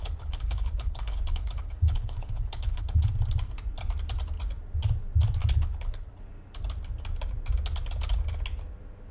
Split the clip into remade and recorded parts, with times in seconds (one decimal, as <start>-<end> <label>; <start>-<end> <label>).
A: 0.0-3.1 remade; 3.1-5.4 recorded; 5.4-6.2 remade; 6.2-9.1 recorded